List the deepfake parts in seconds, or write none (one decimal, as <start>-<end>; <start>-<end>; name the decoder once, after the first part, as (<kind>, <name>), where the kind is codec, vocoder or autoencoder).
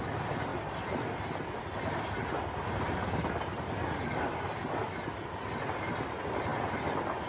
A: none